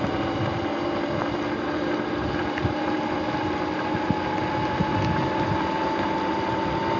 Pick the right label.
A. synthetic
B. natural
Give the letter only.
B